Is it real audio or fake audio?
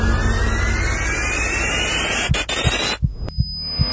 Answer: real